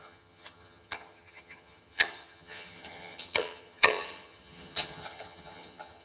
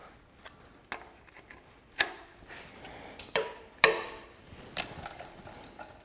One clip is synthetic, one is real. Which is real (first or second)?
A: second